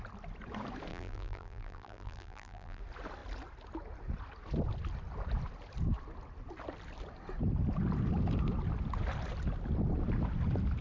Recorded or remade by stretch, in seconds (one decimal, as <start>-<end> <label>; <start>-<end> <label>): 0.0-0.9 recorded; 0.9-2.8 remade; 2.8-10.8 recorded